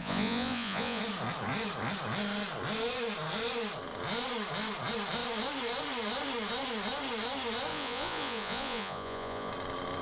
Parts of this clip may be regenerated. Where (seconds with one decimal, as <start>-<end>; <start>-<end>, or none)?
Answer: 0.0-1.0; 7.7-9.5